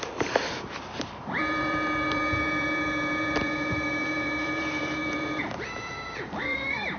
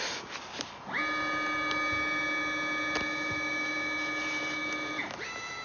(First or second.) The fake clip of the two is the first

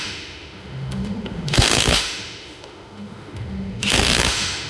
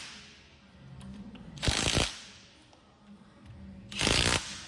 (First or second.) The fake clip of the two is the first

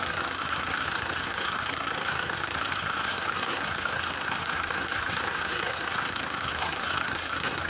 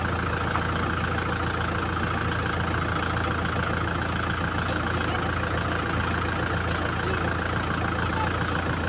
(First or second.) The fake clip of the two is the first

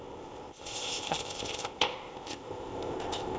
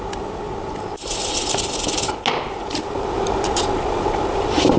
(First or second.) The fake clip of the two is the first